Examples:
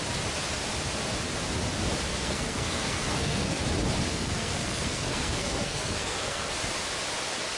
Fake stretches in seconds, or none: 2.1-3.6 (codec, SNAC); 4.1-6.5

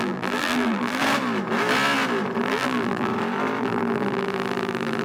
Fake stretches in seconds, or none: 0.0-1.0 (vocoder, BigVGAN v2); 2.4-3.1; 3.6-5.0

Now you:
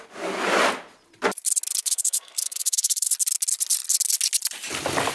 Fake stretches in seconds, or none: 1.8-3.1 (codec, SNAC)

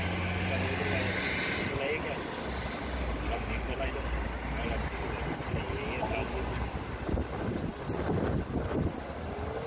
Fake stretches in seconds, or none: none

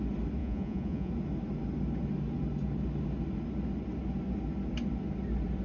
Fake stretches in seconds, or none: 0.4-1.1 (vocoder, Vocos)